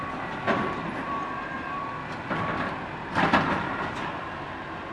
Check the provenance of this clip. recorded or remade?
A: recorded